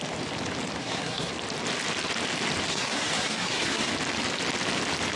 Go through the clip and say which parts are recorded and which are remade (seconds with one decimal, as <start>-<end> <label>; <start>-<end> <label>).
0.0-0.8 recorded; 0.8-1.3 remade; 1.3-2.7 recorded; 2.7-3.9 remade; 3.9-5.2 recorded